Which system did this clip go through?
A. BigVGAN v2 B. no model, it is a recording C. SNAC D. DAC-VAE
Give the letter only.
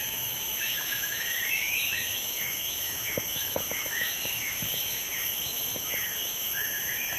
D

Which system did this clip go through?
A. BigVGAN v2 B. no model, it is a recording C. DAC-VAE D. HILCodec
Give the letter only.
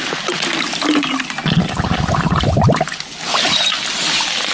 B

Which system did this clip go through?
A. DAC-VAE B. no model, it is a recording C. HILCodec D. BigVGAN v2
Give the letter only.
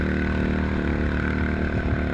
B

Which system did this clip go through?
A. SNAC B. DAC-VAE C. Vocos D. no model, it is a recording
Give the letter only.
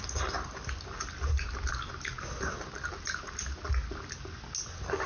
D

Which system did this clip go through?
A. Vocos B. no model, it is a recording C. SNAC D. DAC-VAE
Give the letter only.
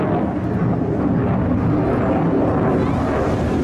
B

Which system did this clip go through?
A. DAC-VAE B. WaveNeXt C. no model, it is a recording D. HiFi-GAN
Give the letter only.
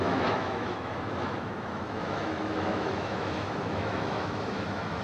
A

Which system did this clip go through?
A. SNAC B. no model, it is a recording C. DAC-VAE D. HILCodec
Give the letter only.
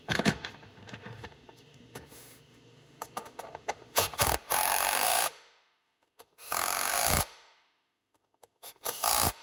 C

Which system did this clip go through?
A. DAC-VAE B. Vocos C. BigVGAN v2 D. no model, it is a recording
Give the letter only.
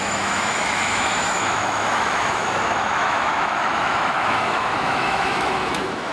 A